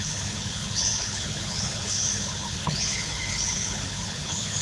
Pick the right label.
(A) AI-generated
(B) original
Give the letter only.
A